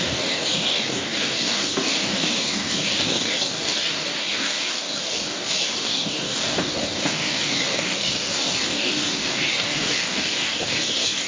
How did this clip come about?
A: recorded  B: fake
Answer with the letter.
B